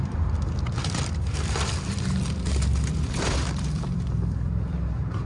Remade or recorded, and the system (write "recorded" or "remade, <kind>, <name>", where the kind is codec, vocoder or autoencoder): remade, vocoder, BigVGAN v2